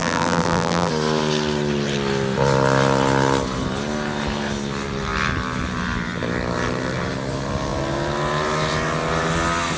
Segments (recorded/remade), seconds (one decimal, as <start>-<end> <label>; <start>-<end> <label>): 0.0-0.9 remade; 0.9-9.8 recorded